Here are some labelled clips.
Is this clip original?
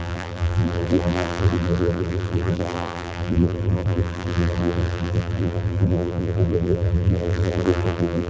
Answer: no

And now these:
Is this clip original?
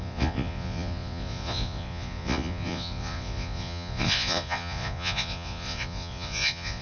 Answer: no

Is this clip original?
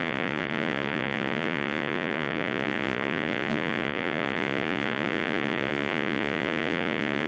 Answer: no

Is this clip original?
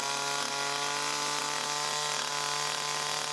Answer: yes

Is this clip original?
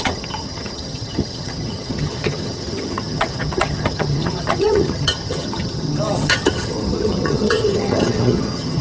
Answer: no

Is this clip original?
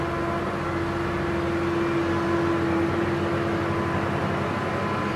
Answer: yes